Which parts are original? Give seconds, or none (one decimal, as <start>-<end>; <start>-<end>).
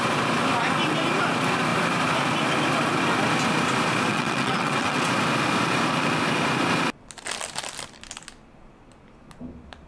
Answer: 0.0-4.1; 5.1-9.9